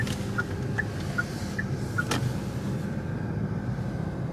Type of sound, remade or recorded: recorded